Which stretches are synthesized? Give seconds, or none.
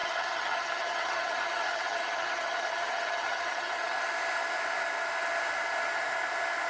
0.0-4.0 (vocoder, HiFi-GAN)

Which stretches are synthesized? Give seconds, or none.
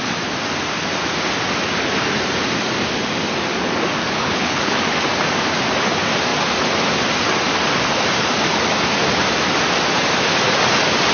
4.0-4.8 (codec, HILCodec)